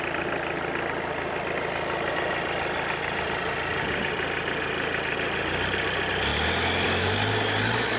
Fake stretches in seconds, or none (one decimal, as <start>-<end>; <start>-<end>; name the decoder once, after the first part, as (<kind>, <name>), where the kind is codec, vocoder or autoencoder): none

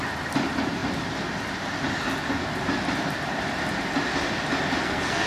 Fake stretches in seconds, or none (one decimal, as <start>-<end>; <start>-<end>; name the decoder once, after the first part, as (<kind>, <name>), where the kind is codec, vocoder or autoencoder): 4.8-5.3 (codec, SNAC)

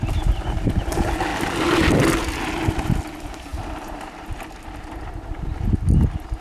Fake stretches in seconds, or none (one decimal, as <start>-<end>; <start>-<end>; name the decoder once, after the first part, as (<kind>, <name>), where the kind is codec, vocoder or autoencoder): none